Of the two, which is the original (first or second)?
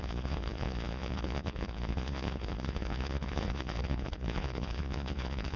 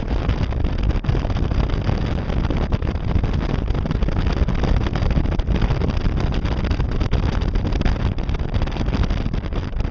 second